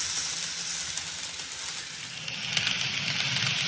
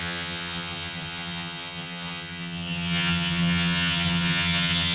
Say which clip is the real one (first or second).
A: first